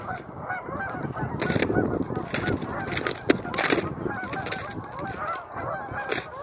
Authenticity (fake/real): real